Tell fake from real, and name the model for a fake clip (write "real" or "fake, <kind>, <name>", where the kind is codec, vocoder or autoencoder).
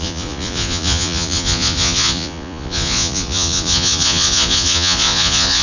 fake, vocoder, Vocos